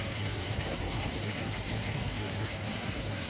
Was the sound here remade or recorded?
remade